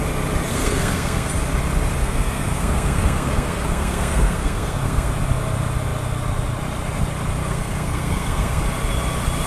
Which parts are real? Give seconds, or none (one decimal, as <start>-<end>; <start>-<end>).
0.0-0.5; 1.3-2.0; 5.1-7.4; 8.6-9.5